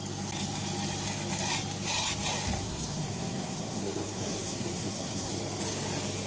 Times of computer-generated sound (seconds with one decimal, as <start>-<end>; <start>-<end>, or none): 2.6-5.4